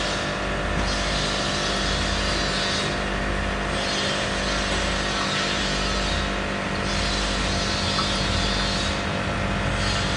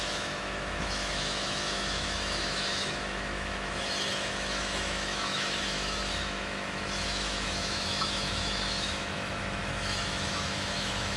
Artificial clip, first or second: second